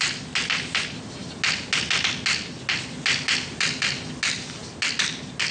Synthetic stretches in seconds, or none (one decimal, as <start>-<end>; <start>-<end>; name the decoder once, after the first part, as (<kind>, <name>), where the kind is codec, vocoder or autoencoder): none